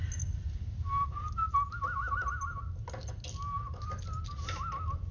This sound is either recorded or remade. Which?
recorded